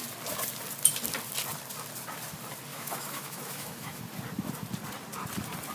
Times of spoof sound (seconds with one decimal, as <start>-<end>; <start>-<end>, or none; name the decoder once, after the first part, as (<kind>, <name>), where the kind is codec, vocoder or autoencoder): 2.7-4.0 (autoencoder, DAC-VAE)